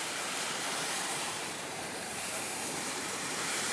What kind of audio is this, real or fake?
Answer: fake